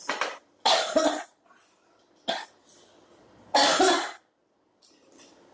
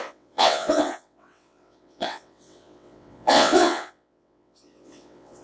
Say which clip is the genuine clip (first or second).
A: first